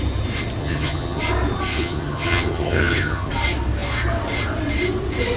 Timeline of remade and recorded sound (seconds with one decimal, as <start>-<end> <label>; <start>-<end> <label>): 0.0-0.6 recorded; 0.6-1.2 remade; 1.2-1.7 recorded; 1.7-3.3 remade; 3.3-5.4 recorded